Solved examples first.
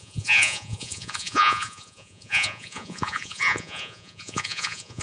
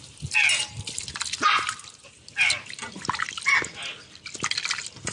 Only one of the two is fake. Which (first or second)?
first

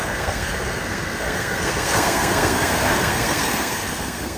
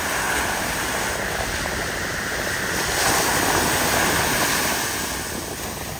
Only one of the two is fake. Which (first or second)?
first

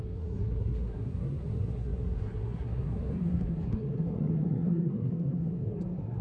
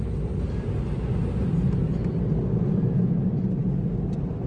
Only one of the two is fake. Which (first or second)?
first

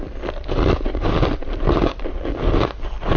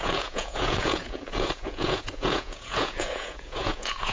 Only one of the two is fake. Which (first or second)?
second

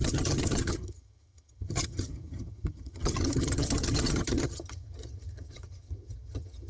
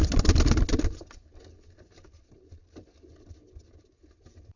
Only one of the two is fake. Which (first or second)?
first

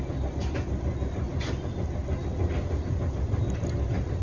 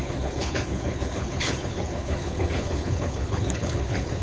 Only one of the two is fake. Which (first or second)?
second